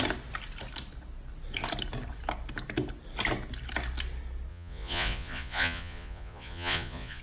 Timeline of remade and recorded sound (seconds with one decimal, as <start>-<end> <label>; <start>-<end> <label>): 0.0-4.5 recorded; 4.5-7.2 remade